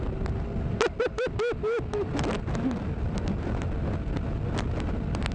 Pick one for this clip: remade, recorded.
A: recorded